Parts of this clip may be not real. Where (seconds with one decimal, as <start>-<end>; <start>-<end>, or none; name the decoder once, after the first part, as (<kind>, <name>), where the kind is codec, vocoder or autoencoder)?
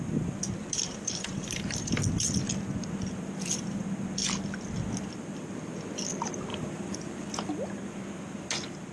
0.6-2.0 (vocoder, BigVGAN v2); 6.5-7.5